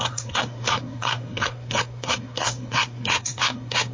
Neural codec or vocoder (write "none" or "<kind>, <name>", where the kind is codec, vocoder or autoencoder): codec, SNAC